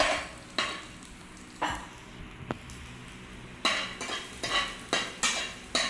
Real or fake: real